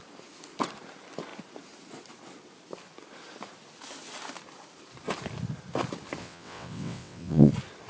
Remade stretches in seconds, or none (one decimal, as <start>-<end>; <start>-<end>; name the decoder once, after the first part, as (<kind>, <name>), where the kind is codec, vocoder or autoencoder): 6.2-7.5 (vocoder, WaveNeXt)

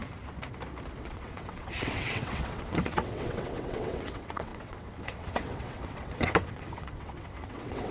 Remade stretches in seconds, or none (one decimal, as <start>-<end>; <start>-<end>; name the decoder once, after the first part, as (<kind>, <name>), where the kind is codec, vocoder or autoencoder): 1.0-7.9 (vocoder, WaveNeXt)

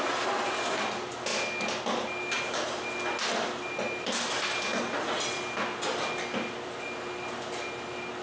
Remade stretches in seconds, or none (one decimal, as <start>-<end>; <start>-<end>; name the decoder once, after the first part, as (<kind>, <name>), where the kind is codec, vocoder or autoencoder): none

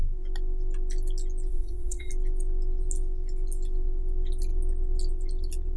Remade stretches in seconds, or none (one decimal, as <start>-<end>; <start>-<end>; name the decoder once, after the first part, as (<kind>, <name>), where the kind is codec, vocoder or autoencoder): 1.5-2.1 (vocoder, WaveNeXt)

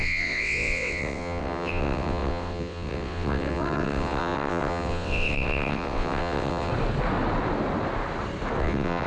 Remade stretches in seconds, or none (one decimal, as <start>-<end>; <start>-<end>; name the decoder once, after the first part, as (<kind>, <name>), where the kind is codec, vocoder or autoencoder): 0.0-6.7 (vocoder, WaveNeXt); 8.6-9.1